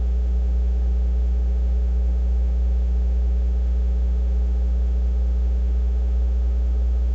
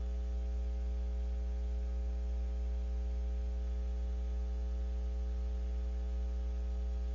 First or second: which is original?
second